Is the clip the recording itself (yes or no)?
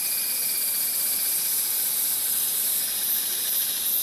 yes